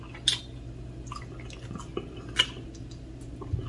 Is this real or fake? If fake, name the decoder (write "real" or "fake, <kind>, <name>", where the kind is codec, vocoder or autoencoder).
real